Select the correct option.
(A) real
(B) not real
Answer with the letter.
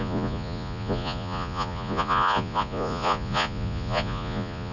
B